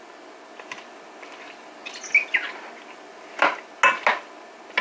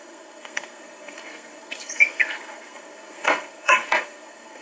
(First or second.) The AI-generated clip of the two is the second